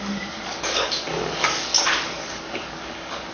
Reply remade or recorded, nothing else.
remade